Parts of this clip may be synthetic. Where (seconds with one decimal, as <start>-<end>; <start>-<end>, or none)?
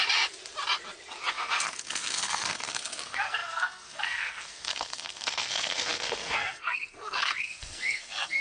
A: 1.3-8.4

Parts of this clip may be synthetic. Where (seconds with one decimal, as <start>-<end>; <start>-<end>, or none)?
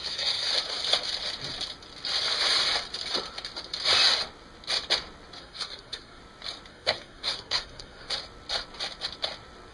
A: 0.0-0.5; 5.4-6.2; 6.7-8.2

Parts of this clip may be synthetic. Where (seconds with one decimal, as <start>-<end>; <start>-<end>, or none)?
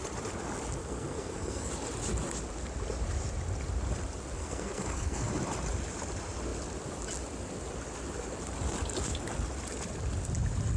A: 0.8-1.7; 4.4-5.3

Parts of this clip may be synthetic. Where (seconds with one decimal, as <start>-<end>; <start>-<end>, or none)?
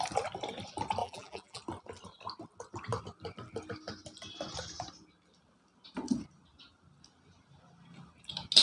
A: 1.0-1.6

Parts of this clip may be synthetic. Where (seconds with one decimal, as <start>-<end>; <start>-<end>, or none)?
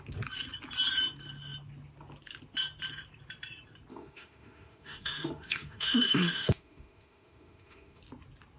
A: 3.9-8.0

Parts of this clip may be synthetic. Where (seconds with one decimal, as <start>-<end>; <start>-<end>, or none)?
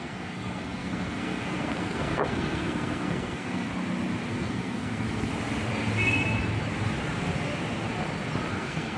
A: 0.0-3.7; 4.3-5.3; 8.5-9.0